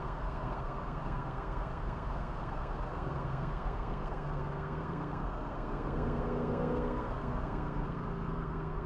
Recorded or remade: remade